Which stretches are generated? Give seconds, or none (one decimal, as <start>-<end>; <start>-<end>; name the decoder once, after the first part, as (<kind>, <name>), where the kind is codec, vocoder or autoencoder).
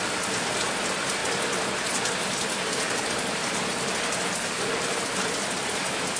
0.0-1.2 (vocoder, BigVGAN v2); 2.7-6.2